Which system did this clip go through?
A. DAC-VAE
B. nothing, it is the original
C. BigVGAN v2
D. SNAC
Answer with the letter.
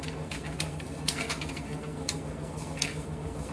D